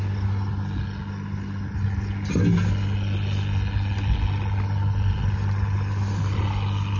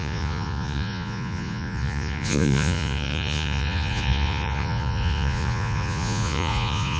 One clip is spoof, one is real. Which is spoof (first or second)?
second